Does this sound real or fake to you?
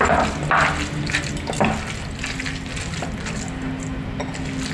real